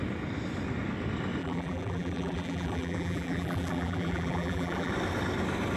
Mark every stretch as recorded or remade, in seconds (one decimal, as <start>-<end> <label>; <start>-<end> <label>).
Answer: 0.0-1.4 recorded; 1.4-4.9 remade; 4.9-5.8 recorded